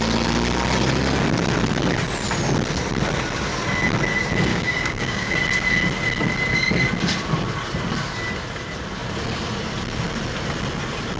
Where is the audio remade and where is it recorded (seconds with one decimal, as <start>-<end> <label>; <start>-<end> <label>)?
0.0-4.5 recorded; 4.5-5.3 remade; 5.3-11.2 recorded